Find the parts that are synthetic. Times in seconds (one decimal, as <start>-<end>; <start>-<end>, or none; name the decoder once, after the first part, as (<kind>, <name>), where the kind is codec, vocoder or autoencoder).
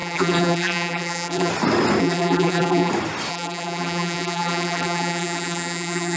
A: 0.0-1.5 (vocoder, BigVGAN v2); 2.0-2.9; 3.3-6.2